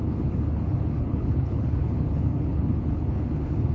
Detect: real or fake fake